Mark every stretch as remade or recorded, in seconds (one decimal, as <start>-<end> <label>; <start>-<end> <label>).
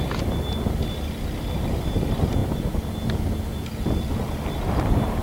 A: 0.0-5.2 recorded